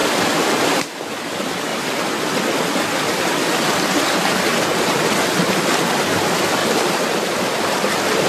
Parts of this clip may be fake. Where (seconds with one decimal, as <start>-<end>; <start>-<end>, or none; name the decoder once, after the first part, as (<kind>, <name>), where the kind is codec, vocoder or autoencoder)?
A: 0.0-0.7 (vocoder, BigVGAN v2); 1.7-2.7; 6.6-8.3